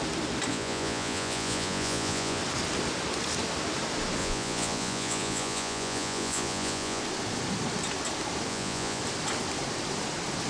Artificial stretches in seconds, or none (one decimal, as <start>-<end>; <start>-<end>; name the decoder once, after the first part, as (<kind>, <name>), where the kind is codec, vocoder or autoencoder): 0.5-2.4 (vocoder, Vocos); 4.2-7.0; 8.5-9.0